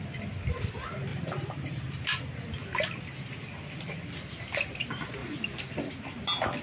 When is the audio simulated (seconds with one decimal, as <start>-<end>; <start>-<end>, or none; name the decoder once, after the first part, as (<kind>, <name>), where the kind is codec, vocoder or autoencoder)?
1.1-2.2 (vocoder, BigVGAN v2); 5.2-5.9